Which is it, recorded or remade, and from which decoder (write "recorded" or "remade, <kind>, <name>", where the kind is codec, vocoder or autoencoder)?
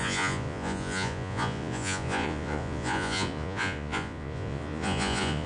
remade, vocoder, Vocos